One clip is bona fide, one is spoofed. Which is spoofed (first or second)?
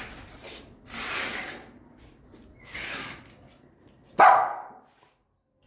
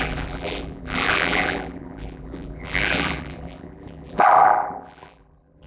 second